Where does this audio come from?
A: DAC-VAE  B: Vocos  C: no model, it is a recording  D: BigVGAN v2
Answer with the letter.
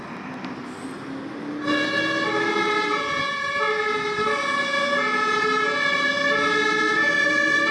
C